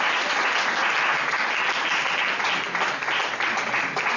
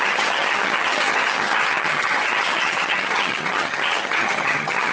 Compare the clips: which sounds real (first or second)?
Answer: first